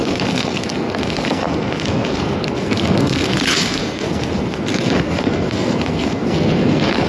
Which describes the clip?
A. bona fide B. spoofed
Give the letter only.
B